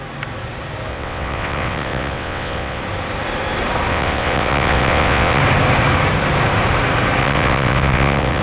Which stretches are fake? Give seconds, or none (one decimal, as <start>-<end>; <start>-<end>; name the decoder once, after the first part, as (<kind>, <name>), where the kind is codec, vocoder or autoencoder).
0.9-2.8 (vocoder, WaveNeXt); 3.9-5.4; 7.2-8.4